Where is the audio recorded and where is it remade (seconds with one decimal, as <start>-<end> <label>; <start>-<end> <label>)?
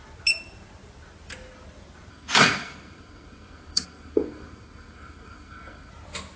0.0-2.1 recorded; 2.1-5.9 remade; 5.9-6.4 recorded